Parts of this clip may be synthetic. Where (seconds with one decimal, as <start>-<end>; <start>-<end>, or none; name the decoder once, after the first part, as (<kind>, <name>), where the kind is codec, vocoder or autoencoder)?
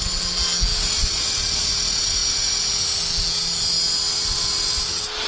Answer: none